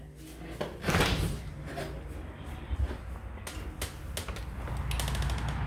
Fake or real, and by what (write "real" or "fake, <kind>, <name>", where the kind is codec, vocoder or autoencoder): real